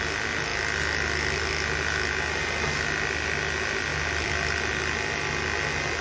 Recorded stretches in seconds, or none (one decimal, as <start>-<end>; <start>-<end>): 0.0-3.9; 4.8-6.0